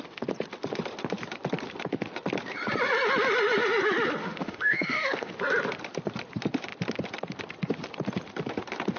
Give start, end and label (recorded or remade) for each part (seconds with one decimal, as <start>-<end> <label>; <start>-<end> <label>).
0.0-4.2 recorded; 4.2-5.3 remade; 5.3-9.0 recorded